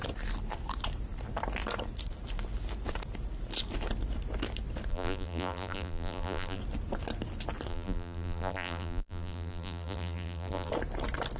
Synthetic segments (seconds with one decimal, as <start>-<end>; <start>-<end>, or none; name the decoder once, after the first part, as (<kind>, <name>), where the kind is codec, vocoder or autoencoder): 4.9-6.6 (vocoder, BigVGAN v2); 7.7-10.7